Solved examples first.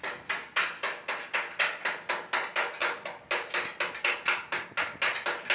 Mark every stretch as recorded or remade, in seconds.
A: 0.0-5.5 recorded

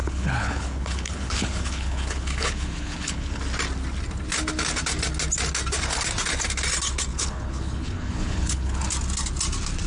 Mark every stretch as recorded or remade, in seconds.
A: 0.0-3.4 remade; 3.4-7.1 recorded; 7.1-8.8 remade; 8.8-9.9 recorded